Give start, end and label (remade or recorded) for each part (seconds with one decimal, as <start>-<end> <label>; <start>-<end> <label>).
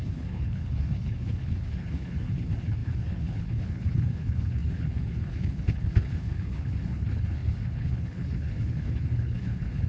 0.0-9.9 remade